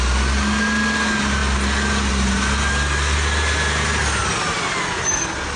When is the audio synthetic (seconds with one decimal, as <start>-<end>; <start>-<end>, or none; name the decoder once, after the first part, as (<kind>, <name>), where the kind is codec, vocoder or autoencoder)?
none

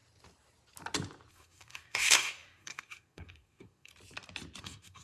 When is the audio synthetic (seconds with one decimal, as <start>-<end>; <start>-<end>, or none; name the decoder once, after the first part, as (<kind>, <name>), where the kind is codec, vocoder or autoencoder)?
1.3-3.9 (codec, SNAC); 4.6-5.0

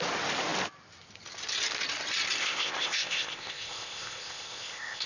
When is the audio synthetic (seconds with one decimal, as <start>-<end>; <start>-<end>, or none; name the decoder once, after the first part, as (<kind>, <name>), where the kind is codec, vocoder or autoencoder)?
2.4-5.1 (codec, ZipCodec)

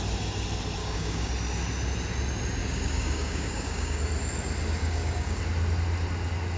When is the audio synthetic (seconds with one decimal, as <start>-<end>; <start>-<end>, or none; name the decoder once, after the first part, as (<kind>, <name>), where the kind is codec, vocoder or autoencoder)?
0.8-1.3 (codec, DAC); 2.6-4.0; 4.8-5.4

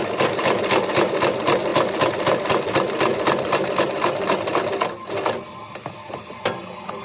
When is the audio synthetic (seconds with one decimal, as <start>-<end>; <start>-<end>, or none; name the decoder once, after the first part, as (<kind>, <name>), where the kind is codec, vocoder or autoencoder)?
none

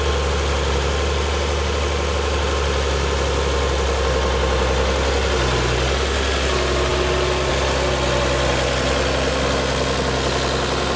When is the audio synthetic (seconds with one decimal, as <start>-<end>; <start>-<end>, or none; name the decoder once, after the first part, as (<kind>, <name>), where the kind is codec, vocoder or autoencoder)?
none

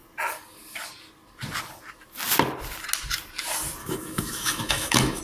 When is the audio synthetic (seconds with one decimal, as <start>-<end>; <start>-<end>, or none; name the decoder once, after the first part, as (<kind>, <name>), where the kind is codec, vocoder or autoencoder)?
3.8-5.2 (autoencoder, DAC-VAE)